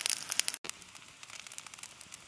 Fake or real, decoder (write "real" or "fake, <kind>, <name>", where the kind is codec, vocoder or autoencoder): real